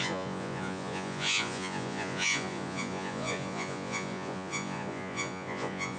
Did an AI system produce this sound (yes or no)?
yes